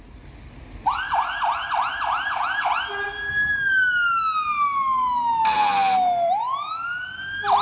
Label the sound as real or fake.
real